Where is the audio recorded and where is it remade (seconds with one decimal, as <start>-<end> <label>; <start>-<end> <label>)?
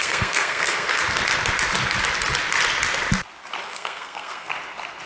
0.0-1.0 remade; 1.0-3.6 recorded; 3.6-4.5 remade; 4.5-5.1 recorded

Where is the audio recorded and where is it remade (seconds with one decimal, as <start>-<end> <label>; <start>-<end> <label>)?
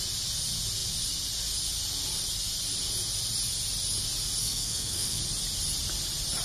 0.0-4.4 recorded; 4.4-5.2 remade; 5.2-6.4 recorded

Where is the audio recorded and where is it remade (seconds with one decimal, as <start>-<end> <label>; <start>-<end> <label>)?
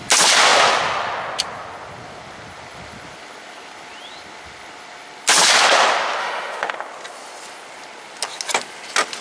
0.0-6.2 recorded; 6.2-6.7 remade; 6.7-9.2 recorded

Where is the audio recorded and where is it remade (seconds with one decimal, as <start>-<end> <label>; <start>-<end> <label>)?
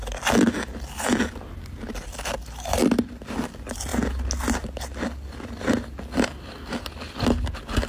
0.0-7.9 recorded